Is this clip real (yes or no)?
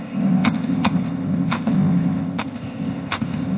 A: no